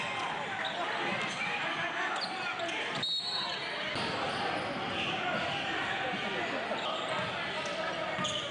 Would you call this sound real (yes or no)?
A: yes